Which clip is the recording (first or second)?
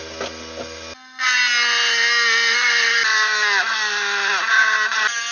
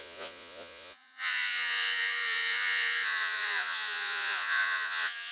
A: first